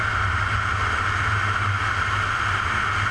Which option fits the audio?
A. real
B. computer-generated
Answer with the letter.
A